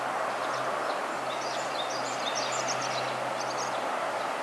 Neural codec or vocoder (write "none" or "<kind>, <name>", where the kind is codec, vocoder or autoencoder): none